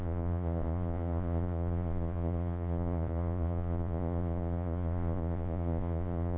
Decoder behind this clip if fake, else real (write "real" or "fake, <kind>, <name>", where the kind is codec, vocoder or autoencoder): fake, vocoder, Vocos